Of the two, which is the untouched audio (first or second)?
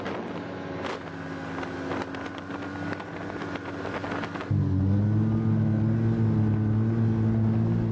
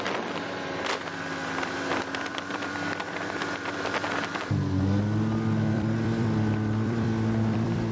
first